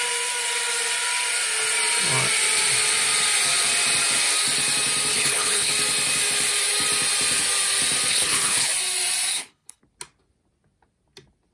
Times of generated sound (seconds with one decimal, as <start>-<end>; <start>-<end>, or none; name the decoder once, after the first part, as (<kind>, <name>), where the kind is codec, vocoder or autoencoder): 5.1-5.7 (codec, HILCodec); 8.1-8.7; 9.3-9.8